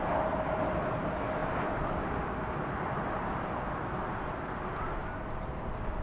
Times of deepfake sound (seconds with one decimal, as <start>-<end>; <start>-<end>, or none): none